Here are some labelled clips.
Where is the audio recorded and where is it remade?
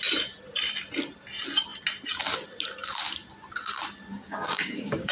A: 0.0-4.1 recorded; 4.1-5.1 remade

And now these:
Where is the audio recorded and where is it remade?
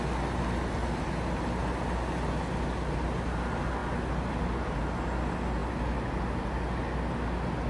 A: 0.0-7.7 recorded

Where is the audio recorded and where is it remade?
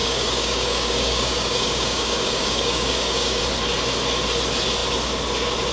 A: 0.0-3.4 remade; 3.4-5.7 recorded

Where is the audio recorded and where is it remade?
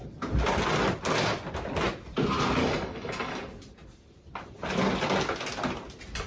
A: 0.0-2.6 recorded; 2.6-3.4 remade; 3.4-6.3 recorded